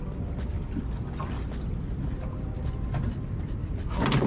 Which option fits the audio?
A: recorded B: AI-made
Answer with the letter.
A